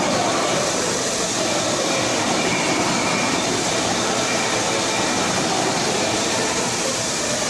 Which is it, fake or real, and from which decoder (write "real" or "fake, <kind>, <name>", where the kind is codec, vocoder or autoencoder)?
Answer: fake, vocoder, BigVGAN v2